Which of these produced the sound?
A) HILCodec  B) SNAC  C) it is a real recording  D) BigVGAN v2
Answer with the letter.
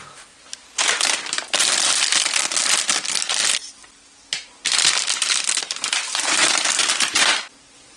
C